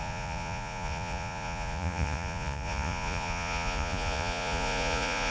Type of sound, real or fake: fake